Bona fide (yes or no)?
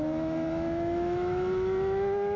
no